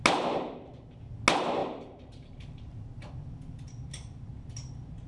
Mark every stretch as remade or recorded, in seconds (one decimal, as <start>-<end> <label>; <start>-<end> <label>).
0.0-1.6 recorded; 1.6-3.1 remade; 3.1-5.1 recorded